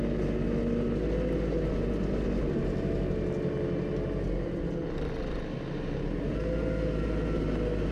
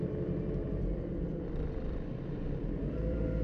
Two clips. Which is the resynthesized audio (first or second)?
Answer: second